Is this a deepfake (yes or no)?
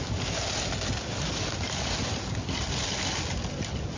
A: no